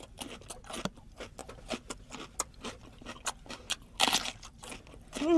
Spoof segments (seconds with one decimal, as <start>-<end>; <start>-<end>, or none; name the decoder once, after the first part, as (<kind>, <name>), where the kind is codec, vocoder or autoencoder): none